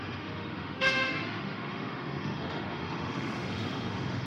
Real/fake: fake